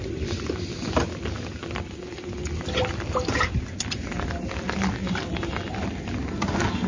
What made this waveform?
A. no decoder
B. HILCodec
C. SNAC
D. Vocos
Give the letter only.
A